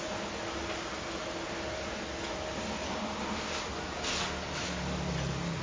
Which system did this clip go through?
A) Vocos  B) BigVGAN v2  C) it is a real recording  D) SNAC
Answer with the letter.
C